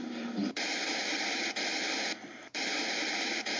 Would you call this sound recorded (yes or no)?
no